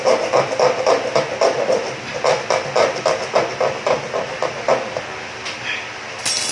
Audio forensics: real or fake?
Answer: real